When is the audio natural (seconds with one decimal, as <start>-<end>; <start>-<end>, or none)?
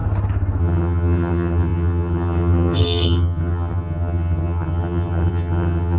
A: 0.0-0.6